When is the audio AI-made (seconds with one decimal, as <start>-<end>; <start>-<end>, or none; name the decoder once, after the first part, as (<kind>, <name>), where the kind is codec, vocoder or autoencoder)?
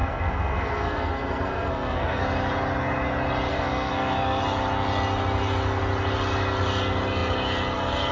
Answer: 0.0-2.2 (codec, SNAC); 3.5-4.4